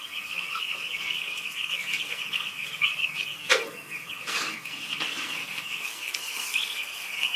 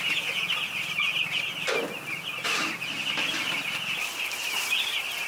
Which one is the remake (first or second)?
first